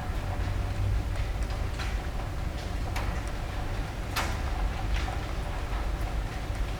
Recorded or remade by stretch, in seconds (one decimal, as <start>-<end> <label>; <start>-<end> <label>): 0.0-6.8 recorded